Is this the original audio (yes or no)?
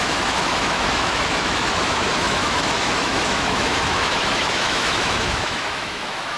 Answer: no